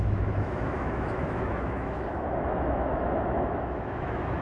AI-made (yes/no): yes